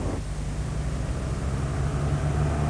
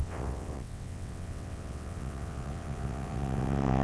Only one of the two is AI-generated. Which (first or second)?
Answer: second